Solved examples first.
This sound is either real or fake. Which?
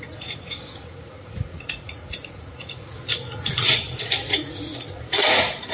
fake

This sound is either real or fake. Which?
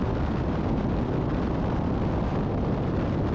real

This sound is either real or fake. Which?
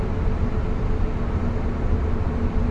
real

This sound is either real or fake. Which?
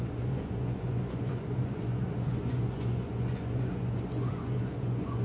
fake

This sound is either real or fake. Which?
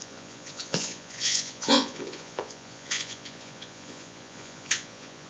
fake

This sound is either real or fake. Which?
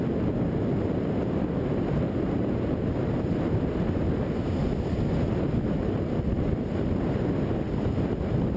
real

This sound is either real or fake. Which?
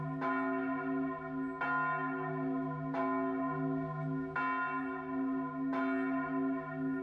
real